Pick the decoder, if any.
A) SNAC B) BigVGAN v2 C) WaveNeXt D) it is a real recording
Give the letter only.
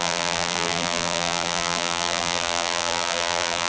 B